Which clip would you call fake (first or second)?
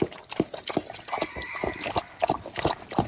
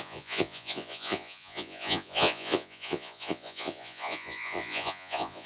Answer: second